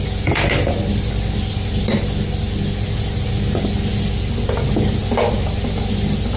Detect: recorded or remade recorded